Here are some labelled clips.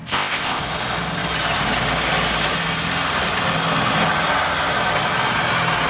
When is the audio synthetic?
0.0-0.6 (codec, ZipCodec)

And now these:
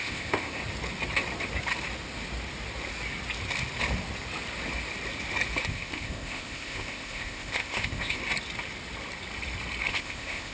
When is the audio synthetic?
0.0-0.6 (codec, ZipCodec); 5.6-8.2; 9.9-10.5

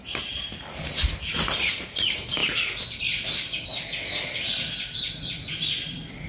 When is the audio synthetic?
none